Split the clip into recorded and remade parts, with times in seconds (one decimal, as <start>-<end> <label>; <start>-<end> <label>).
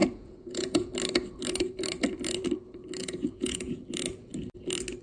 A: 0.0-0.9 remade; 0.9-3.0 recorded; 3.0-3.8 remade; 3.8-5.0 recorded